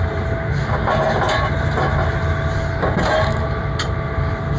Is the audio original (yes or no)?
yes